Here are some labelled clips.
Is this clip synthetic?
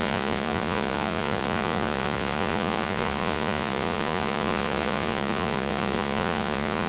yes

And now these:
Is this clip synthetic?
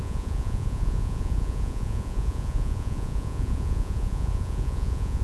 yes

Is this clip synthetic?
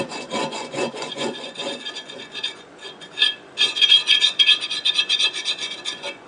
yes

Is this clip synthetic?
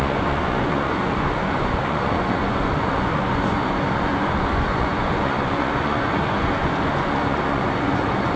yes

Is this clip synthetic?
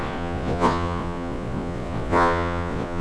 yes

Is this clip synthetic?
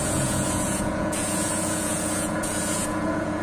yes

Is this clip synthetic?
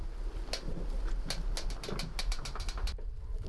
no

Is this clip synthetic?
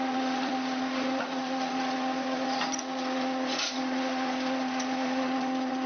yes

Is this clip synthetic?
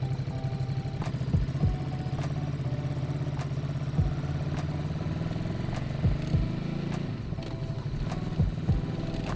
no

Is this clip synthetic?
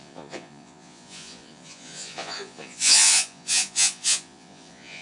yes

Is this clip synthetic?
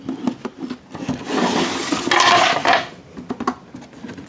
no